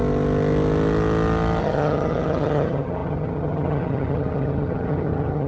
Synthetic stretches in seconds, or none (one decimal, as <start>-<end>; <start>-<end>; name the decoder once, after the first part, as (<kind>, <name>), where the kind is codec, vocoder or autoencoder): 1.6-5.5 (vocoder, HiFi-GAN)